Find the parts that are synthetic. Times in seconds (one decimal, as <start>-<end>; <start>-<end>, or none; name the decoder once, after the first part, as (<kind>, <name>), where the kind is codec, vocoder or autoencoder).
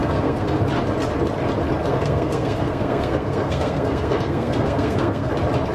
0.0-0.6 (codec, SNAC); 1.9-5.3